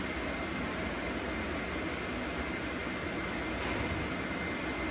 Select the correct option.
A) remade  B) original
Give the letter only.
B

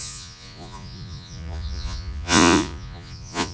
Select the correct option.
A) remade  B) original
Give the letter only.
A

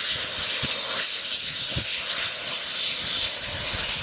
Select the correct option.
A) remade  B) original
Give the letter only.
B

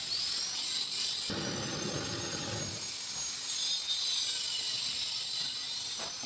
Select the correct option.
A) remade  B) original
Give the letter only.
B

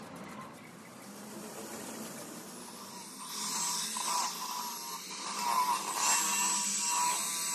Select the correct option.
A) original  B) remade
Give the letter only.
A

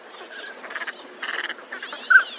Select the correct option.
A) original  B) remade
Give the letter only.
A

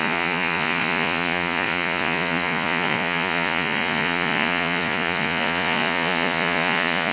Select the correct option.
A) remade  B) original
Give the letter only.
A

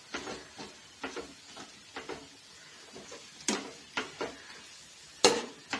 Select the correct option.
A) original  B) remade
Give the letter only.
A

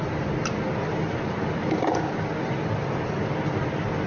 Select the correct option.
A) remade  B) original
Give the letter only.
B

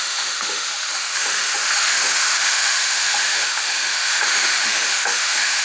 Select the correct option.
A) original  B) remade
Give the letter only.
B